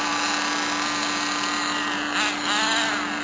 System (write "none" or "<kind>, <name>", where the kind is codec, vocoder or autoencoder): none